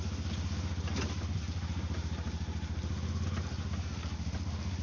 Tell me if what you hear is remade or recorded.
recorded